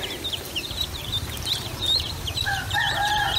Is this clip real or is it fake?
fake